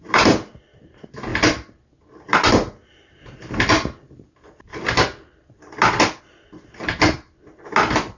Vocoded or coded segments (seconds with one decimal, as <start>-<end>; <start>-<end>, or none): none